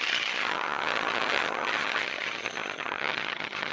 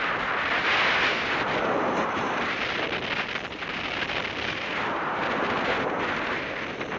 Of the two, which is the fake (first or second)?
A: first